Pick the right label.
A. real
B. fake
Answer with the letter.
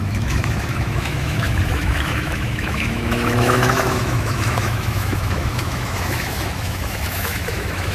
B